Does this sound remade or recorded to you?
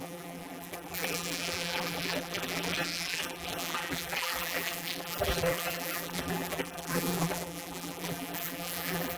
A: remade